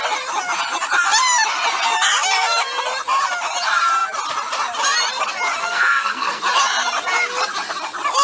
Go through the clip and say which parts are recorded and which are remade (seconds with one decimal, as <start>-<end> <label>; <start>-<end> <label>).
0.0-5.6 recorded; 5.6-6.4 remade; 6.4-8.2 recorded